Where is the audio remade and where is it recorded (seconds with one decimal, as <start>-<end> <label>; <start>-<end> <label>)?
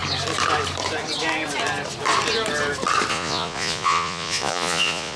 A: 0.0-3.1 recorded; 3.1-5.2 remade